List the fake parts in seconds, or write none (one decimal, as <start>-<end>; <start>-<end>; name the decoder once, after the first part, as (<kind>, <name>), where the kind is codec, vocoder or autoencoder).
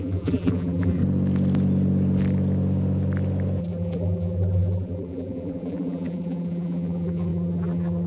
0.0-1.0 (vocoder, BigVGAN v2); 3.6-8.1